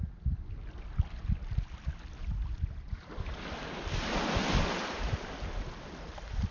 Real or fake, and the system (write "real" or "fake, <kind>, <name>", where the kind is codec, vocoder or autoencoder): real